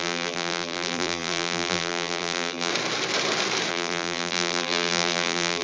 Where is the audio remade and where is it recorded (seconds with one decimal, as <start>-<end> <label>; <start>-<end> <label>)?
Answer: 0.0-2.7 remade; 2.7-3.7 recorded; 3.7-5.6 remade